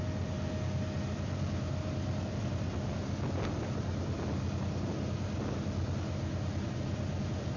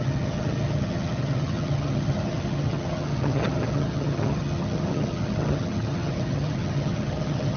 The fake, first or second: second